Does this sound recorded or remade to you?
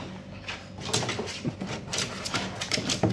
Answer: recorded